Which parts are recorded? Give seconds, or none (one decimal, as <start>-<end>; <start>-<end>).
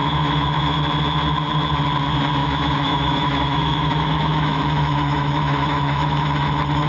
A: 0.8-2.4; 6.5-6.9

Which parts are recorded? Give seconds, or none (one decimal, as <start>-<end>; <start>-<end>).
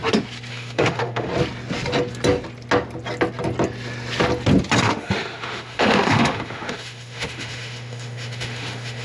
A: 0.0-0.5; 1.3-4.8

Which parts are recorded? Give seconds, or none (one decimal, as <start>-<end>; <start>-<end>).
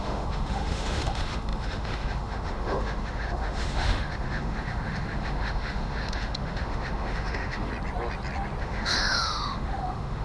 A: 7.7-8.6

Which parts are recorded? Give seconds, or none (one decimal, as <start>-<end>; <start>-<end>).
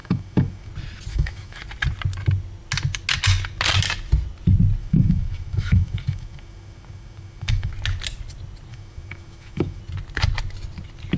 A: 0.7-1.1; 1.6-4.8; 7.7-8.7; 9.8-11.2